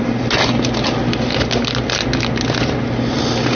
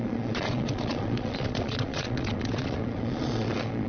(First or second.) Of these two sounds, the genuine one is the first